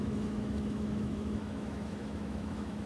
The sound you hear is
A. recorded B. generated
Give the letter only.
B